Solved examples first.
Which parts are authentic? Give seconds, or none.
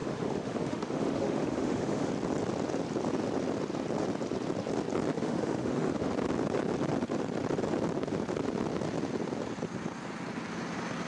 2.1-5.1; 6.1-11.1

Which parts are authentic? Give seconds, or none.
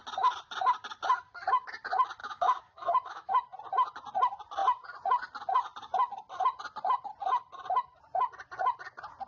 0.0-2.2; 3.3-9.3